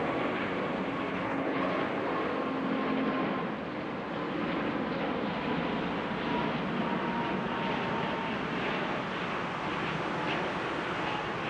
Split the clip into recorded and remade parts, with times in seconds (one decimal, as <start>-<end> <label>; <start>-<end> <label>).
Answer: 0.0-1.1 recorded; 1.1-1.7 remade; 1.7-11.5 recorded